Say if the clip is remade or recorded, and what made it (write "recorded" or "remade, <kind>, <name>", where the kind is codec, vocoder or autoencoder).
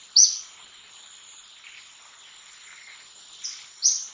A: recorded